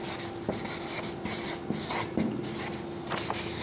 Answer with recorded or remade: recorded